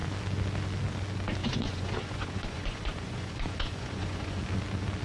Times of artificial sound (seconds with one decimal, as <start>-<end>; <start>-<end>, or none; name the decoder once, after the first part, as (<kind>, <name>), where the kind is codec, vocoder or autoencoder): 1.4-4.4 (vocoder, Vocos)